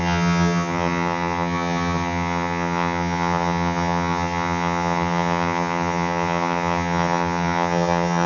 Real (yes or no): no